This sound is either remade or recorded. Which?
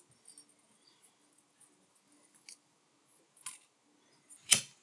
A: recorded